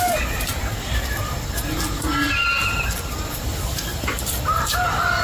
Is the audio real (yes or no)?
yes